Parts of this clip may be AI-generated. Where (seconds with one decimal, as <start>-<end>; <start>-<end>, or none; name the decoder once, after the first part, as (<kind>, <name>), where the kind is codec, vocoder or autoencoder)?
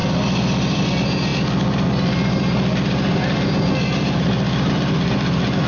none